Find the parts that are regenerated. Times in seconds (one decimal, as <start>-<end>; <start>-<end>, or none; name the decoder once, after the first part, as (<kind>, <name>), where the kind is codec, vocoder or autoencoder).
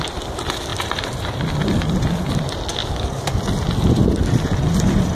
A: 2.7-3.4 (codec, DAC)